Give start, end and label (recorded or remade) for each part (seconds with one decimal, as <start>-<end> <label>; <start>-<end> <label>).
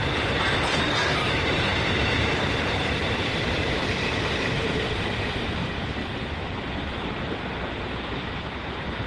0.0-0.8 recorded; 0.8-6.0 remade; 6.0-7.1 recorded; 7.1-9.1 remade